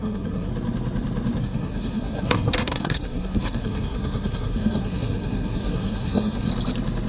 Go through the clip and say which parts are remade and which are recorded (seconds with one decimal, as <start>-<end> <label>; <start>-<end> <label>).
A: 0.0-0.5 remade; 0.5-1.4 recorded; 1.4-6.5 remade; 6.5-7.1 recorded